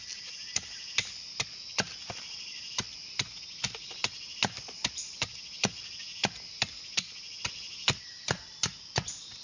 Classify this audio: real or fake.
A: real